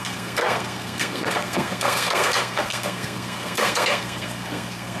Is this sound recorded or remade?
remade